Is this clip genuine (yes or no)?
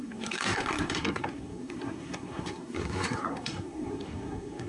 no